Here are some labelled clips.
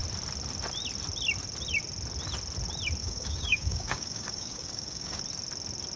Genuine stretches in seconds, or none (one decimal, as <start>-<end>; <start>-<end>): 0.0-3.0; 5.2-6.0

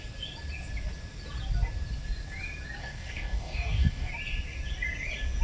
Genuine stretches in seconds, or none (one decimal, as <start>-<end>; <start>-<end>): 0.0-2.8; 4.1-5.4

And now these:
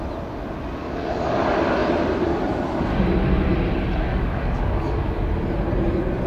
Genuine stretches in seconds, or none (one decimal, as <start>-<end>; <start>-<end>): 0.0-0.8; 1.4-4.1; 5.3-6.3

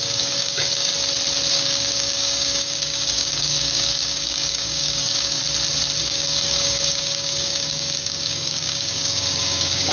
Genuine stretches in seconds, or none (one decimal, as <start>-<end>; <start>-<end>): 0.9-1.5; 5.4-6.0

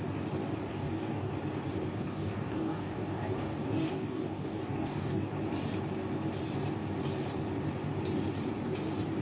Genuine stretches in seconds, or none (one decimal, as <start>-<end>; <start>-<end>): 0.0-0.7; 1.3-1.9; 5.3-9.2

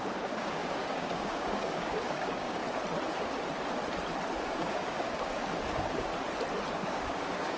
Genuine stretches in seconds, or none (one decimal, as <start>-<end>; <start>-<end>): 2.6-4.4; 6.1-6.7

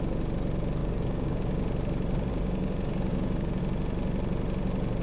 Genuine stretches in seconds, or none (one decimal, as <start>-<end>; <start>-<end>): 0.0-0.8; 1.4-2.3; 3.6-5.0